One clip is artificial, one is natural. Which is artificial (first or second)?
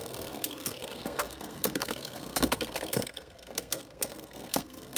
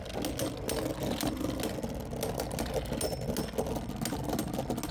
first